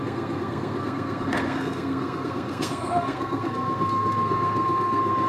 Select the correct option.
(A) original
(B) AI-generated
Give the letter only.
B